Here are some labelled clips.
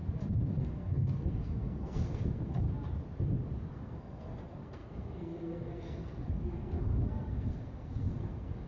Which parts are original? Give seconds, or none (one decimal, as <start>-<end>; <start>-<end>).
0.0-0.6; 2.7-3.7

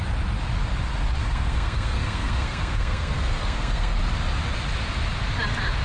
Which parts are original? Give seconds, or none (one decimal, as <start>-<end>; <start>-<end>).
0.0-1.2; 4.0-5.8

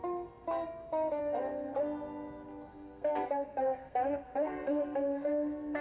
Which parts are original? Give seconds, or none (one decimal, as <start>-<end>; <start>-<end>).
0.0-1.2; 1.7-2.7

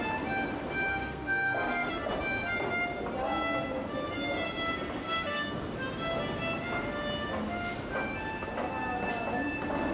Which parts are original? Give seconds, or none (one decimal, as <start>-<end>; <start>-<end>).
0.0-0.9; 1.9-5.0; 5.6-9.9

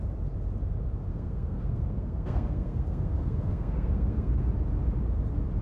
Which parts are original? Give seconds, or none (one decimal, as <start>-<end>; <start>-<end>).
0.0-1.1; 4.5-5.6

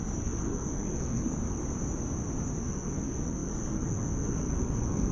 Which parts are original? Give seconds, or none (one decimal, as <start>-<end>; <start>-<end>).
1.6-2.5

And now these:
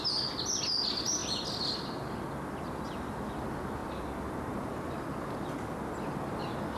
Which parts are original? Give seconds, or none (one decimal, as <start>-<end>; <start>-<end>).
0.0-6.8